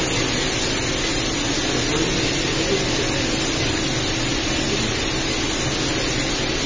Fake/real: real